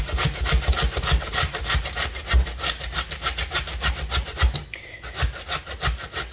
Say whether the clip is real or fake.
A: real